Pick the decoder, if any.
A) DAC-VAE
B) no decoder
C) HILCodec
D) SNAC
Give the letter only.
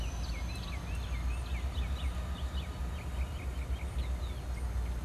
B